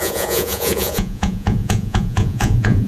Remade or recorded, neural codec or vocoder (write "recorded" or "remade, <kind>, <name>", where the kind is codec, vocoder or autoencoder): remade, vocoder, Vocos